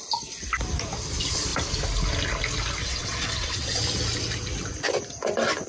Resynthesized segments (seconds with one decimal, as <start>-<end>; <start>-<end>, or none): 2.8-3.8